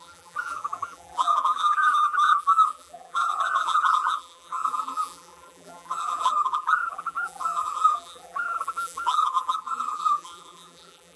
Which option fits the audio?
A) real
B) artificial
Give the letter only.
B